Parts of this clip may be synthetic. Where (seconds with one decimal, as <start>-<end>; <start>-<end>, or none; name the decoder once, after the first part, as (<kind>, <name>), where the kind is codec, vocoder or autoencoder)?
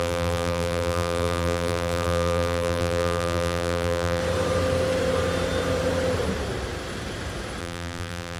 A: 0.0-4.2 (vocoder, BigVGAN v2); 7.6-8.4